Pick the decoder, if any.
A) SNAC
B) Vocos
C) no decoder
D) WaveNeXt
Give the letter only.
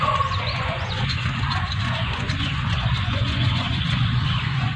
B